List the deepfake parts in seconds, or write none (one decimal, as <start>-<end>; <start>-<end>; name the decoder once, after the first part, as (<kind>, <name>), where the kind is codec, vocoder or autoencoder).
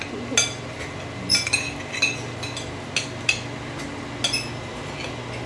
none